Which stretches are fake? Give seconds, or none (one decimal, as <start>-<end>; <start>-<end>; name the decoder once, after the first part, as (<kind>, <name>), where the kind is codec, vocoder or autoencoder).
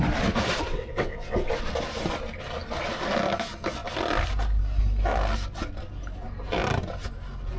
0.7-1.5 (vocoder, WaveNeXt)